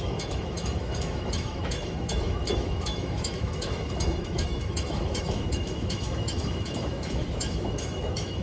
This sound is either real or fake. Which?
fake